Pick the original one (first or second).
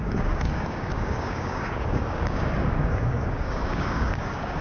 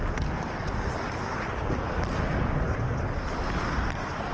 second